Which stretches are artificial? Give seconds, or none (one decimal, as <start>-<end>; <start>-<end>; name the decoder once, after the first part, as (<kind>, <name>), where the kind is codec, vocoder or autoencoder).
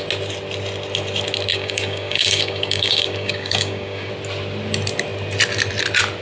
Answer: 1.5-4.1 (codec, DAC)